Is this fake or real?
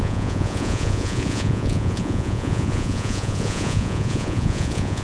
fake